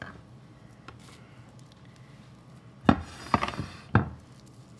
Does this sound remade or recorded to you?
recorded